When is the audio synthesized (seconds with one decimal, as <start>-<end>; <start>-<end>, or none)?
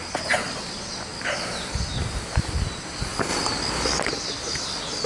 none